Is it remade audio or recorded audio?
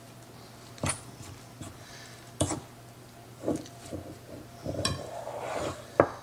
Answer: remade